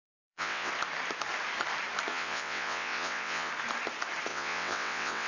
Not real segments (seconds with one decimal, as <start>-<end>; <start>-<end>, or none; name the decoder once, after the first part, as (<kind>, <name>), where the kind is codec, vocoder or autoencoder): 0.0-0.7 (vocoder, WaveNeXt); 2.1-3.5; 4.3-5.3